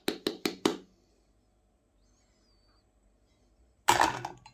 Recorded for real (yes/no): yes